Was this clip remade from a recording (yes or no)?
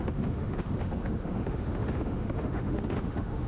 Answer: yes